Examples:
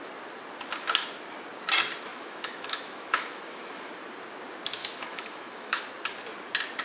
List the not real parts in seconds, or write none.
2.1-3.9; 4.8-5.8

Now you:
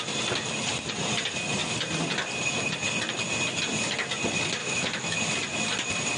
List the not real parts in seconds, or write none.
4.6-5.2

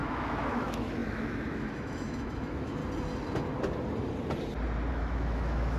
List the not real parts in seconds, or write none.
0.0-2.8; 4.9-5.8

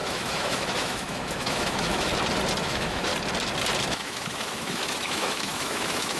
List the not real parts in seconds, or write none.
0.0-2.1; 2.6-3.1; 3.9-6.2

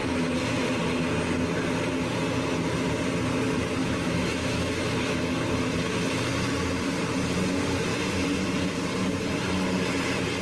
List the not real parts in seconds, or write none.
3.8-6.3